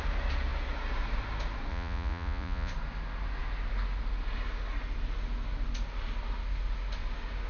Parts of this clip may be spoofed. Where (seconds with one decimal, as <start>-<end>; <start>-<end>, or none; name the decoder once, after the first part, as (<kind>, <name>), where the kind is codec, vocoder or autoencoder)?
1.7-2.7 (vocoder, Vocos)